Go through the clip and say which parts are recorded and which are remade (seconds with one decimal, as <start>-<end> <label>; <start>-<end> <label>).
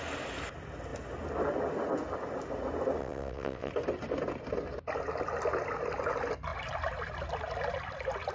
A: 0.0-3.0 recorded; 3.0-3.7 remade; 3.7-8.3 recorded